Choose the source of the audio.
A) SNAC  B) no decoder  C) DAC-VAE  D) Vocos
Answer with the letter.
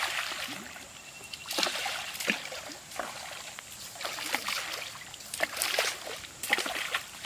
B